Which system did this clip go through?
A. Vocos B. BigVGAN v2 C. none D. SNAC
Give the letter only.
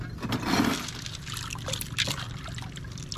C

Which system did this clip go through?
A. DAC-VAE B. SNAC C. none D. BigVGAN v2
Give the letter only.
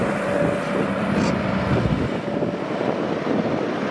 C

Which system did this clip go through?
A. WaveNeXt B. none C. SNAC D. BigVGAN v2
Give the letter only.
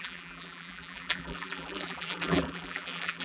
D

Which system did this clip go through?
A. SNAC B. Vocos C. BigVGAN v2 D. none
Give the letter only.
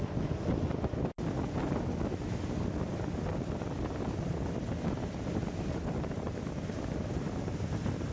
D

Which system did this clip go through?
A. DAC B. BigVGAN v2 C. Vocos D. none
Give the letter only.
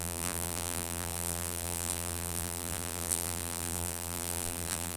B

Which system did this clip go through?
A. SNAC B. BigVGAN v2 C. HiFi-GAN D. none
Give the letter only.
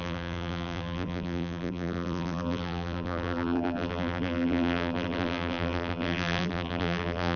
B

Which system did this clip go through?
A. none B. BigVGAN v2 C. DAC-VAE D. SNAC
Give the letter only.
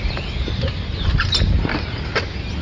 A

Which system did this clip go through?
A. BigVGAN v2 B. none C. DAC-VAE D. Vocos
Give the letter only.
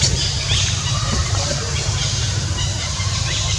A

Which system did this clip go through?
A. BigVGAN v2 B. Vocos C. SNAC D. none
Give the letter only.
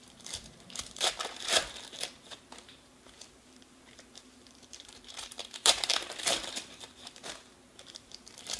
A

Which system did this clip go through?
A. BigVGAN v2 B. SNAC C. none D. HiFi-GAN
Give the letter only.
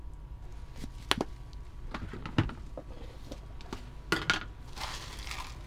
C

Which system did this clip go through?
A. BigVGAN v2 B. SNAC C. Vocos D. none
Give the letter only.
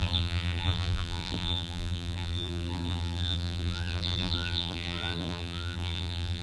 A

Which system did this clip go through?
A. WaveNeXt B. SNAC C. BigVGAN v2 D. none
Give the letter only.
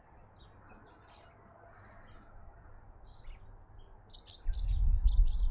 D